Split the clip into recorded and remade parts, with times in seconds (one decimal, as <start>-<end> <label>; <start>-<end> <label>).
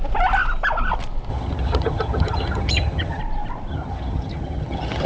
0.0-1.3 recorded; 1.3-3.2 remade; 3.2-3.7 recorded; 3.7-5.1 remade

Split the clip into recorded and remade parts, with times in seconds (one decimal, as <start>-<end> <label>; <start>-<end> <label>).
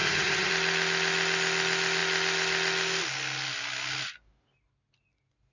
0.0-0.5 remade; 0.5-5.5 recorded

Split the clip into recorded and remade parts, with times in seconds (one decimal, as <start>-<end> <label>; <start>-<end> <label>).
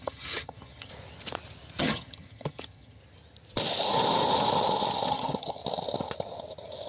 0.0-0.9 remade; 0.9-1.8 recorded; 1.8-3.0 remade; 3.0-5.1 recorded; 5.1-5.6 remade; 5.6-6.9 recorded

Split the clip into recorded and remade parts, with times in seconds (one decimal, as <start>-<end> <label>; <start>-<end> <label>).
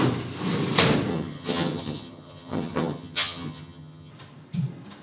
0.0-1.1 recorded; 1.1-4.1 remade; 4.1-5.0 recorded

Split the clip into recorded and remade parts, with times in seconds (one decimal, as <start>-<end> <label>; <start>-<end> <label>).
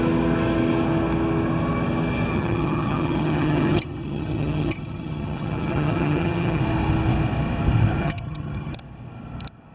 0.0-2.3 recorded; 2.3-6.6 remade; 6.6-8.0 recorded; 8.0-8.7 remade; 8.7-9.7 recorded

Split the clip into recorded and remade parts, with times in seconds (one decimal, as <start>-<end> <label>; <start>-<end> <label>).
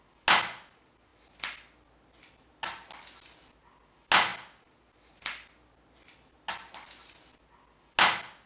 0.0-8.5 recorded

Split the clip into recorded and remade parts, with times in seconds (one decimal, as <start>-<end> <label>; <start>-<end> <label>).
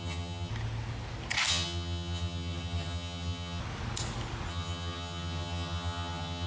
0.0-0.5 remade; 0.5-1.5 recorded; 1.5-3.6 remade; 3.6-4.5 recorded; 4.5-6.5 remade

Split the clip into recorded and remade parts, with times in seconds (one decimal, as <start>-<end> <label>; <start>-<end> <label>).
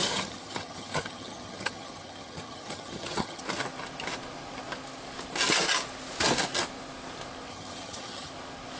0.0-3.4 remade; 3.4-7.5 recorded; 7.5-8.3 remade; 8.3-8.8 recorded